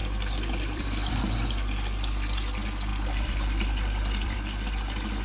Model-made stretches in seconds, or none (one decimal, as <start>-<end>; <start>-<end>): 0.0-1.1; 2.9-5.2